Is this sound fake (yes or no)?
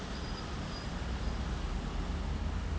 no